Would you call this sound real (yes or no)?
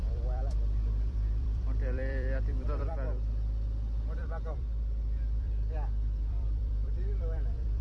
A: no